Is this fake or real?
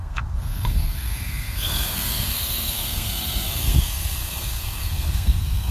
fake